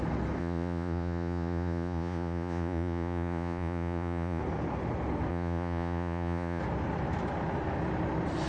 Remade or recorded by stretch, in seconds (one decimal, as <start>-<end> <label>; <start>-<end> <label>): 0.0-0.4 recorded; 0.4-4.4 remade; 4.4-5.3 recorded; 5.3-6.6 remade; 6.6-8.5 recorded